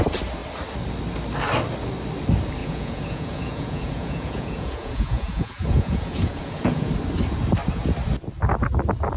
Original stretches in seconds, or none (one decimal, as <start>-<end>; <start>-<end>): 0.0-2.6; 6.9-9.2